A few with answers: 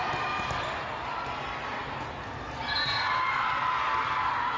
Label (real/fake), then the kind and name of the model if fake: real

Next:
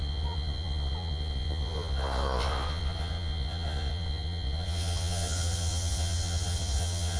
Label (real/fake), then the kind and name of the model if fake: fake, vocoder, Vocos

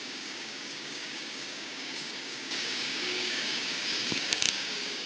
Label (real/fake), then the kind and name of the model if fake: fake, codec, DAC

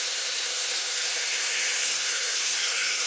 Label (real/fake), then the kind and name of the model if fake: fake, codec, SNAC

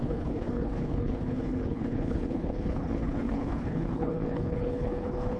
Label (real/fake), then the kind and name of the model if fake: fake, codec, HILCodec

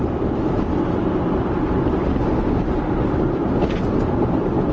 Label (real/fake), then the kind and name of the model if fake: fake, vocoder, BigVGAN v2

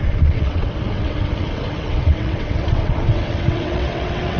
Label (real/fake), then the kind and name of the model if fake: fake, vocoder, WaveNeXt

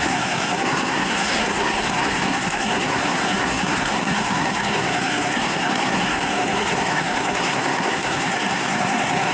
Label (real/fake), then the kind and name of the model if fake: fake, codec, SNAC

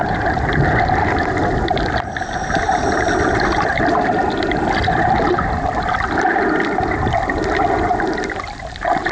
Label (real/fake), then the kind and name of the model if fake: real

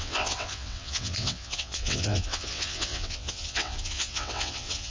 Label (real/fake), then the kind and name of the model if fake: fake, vocoder, WaveNeXt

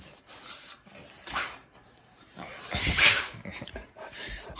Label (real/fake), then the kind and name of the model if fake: fake, vocoder, BigVGAN v2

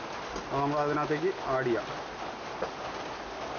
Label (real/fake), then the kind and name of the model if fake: real